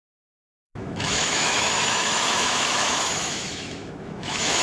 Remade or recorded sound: remade